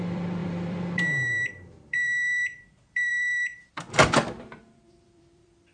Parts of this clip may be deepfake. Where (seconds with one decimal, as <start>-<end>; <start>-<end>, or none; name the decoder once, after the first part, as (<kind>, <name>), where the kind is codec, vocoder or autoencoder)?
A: 0.0-5.7 (vocoder, BigVGAN v2)